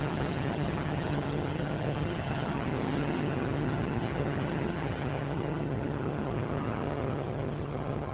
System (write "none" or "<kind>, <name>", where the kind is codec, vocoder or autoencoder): vocoder, HiFi-GAN